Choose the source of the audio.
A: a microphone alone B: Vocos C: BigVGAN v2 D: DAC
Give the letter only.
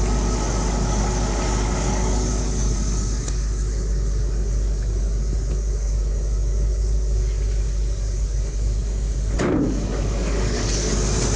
D